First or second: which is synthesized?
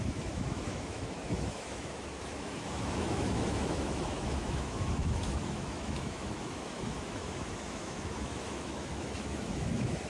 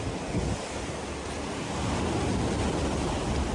first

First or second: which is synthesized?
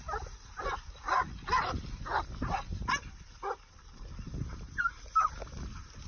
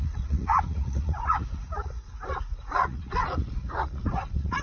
second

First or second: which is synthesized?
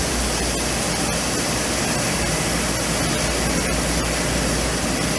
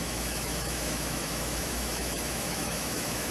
second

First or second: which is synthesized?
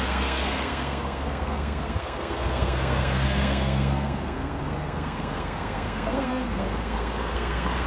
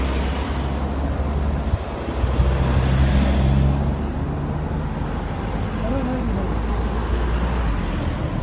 first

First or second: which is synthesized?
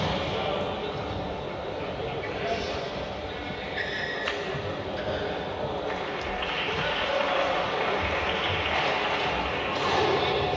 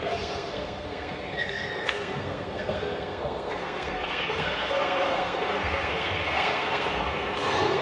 second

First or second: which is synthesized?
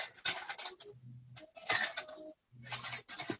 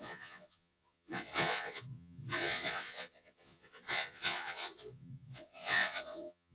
second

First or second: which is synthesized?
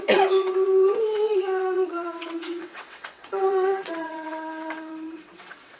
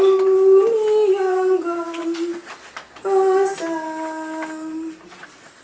first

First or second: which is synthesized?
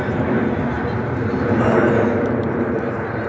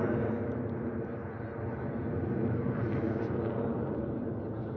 first